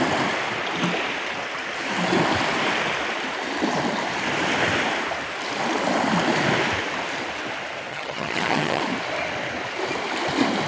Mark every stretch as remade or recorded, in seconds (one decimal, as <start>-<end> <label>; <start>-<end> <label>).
0.0-7.9 recorded; 7.9-8.8 remade; 8.8-10.7 recorded